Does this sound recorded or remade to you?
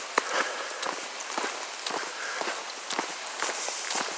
recorded